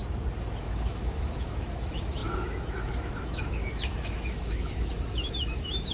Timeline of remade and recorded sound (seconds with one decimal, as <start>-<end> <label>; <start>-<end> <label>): 0.0-0.6 recorded; 0.6-5.9 remade